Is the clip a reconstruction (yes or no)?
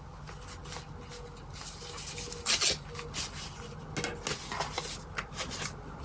no